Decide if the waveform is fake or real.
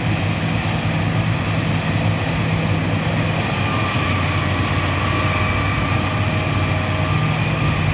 real